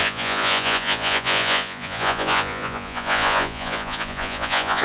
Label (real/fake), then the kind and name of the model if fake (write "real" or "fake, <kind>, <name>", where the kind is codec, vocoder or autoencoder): fake, vocoder, Vocos